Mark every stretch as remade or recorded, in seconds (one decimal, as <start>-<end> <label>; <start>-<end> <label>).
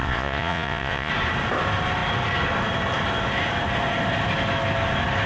0.0-1.1 remade; 1.1-5.3 recorded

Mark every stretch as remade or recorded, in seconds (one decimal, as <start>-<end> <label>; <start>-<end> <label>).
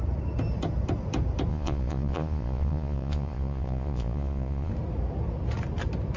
0.0-1.5 recorded; 1.5-4.7 remade; 4.7-6.2 recorded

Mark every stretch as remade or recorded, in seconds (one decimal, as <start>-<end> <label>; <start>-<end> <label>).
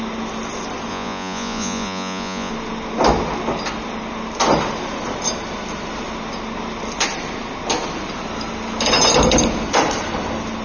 0.0-0.9 recorded; 0.9-2.5 remade; 2.5-10.6 recorded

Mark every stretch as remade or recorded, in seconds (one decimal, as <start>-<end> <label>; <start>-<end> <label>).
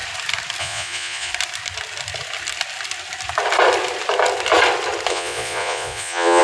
0.0-0.6 recorded; 0.6-1.3 remade; 1.3-5.1 recorded; 5.1-6.4 remade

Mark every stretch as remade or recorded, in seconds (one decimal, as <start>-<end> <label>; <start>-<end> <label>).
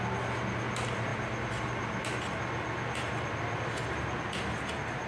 0.0-5.1 recorded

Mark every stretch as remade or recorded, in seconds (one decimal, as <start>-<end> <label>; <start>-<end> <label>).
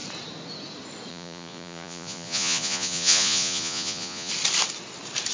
0.0-1.1 recorded; 1.1-4.3 remade; 4.3-5.3 recorded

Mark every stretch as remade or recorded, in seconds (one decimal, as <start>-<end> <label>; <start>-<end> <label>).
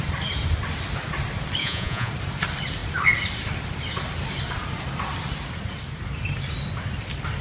0.0-1.6 recorded; 1.6-2.1 remade; 2.1-7.4 recorded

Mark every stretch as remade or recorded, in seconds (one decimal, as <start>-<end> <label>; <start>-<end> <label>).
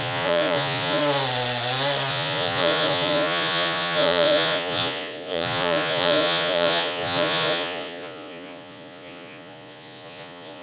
0.0-1.0 remade; 1.0-2.1 recorded; 2.1-10.6 remade